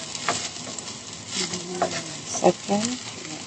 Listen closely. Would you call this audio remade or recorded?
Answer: recorded